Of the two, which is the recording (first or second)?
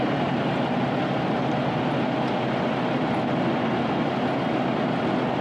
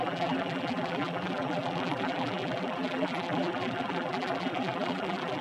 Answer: first